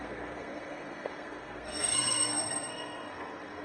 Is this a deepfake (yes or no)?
yes